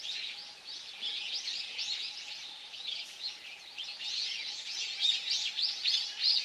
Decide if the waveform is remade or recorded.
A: remade